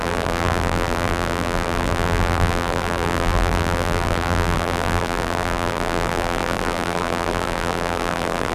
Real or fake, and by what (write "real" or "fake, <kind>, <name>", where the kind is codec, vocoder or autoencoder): fake, vocoder, BigVGAN v2